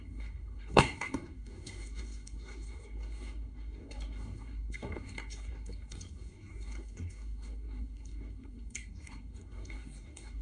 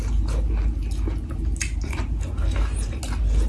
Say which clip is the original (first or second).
second